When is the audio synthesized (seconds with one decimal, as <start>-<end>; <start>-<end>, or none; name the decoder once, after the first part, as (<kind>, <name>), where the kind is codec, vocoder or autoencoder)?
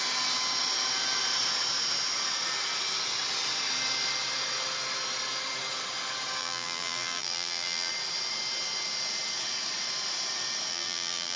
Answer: 6.4-7.9 (vocoder, BigVGAN v2); 10.7-11.4